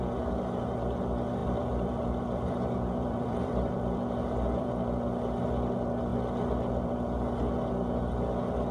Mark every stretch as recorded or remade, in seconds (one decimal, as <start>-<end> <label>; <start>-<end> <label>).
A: 0.0-1.4 recorded; 1.4-4.7 remade; 4.7-8.7 recorded